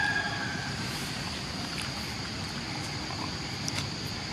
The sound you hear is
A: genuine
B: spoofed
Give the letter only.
B